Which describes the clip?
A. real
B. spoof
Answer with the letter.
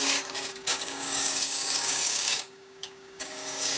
B